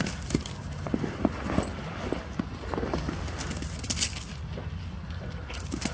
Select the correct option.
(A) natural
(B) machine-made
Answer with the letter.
A